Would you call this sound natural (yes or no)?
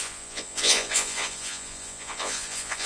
no